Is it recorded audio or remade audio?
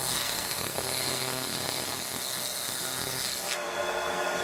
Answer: remade